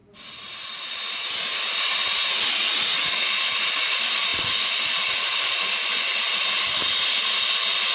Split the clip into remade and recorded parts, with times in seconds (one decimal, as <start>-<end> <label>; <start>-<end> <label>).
0.0-7.9 recorded